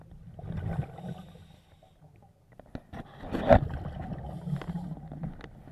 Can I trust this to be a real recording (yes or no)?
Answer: yes